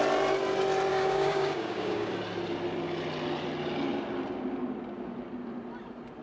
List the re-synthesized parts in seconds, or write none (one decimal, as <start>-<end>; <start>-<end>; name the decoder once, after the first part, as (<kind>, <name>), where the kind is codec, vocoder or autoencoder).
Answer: 0.9-2.1 (codec, DAC)